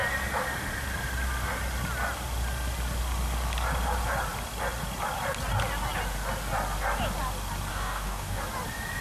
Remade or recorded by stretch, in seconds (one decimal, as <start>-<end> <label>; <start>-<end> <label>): 0.0-7.7 recorded; 7.7-8.4 remade; 8.4-9.0 recorded